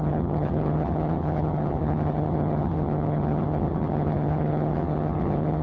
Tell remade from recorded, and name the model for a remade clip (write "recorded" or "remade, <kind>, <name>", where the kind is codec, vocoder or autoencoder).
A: remade, vocoder, HiFi-GAN